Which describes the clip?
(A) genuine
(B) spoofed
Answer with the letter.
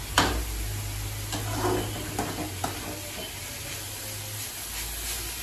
A